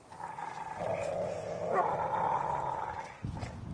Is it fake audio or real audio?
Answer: real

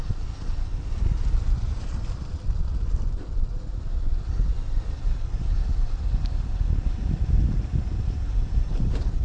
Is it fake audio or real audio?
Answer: fake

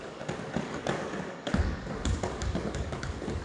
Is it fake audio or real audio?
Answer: fake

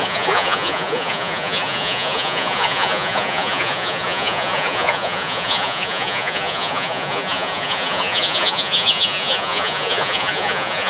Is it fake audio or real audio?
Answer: fake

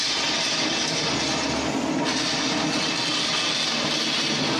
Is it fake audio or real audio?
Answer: real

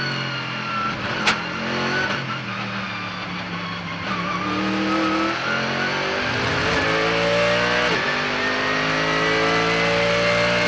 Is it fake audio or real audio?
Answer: real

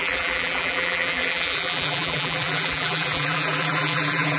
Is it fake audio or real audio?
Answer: fake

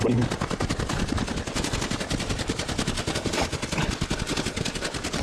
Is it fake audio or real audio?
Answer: real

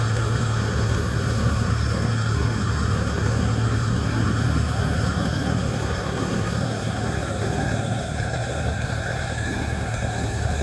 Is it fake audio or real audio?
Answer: fake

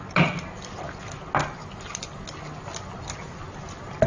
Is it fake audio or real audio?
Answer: real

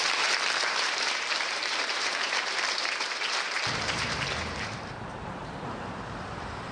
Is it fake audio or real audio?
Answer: fake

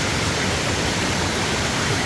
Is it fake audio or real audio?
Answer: real